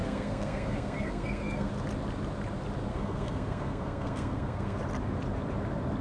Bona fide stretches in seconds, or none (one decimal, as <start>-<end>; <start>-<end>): 1.7-2.9; 4.8-6.0